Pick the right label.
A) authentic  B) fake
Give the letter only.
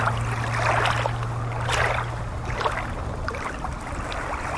A